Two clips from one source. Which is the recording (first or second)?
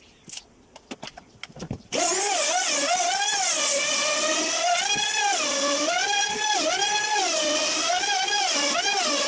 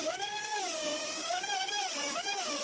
first